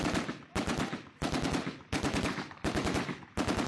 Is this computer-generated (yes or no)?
no